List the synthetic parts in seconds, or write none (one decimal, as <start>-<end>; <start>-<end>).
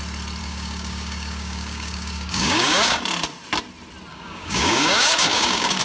0.4-3.0; 4.1-5.8